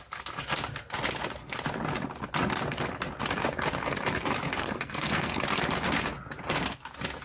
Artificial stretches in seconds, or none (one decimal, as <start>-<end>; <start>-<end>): 4.6-5.4

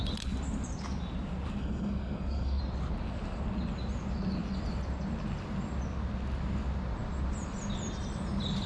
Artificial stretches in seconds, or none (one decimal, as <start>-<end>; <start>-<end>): 1.6-2.6

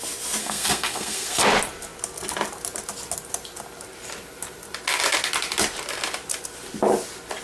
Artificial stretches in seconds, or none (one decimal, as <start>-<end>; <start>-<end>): 0.4-1.4

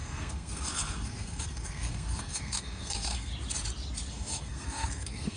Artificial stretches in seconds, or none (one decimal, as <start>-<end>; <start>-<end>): 0.0-3.3; 4.1-5.4

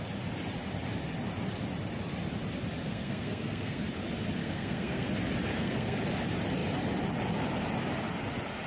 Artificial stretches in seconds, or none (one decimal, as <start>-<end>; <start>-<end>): 2.8-3.8; 4.4-5.1; 5.5-6.0

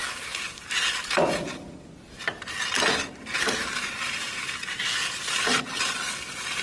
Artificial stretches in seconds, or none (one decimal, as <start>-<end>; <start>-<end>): none

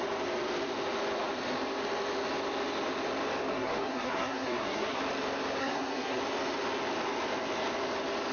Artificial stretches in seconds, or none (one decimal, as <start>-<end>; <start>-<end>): 3.5-5.0; 5.6-6.2

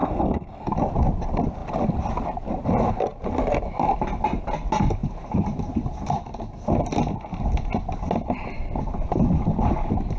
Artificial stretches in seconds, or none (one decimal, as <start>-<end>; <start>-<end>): 0.0-0.7